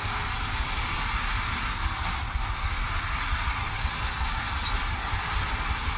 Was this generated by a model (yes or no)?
no